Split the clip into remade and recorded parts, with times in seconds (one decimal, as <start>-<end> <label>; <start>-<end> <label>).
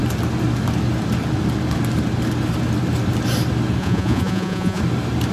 0.0-3.8 recorded; 3.8-4.8 remade; 4.8-5.3 recorded